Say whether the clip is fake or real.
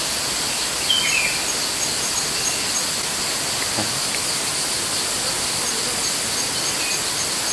real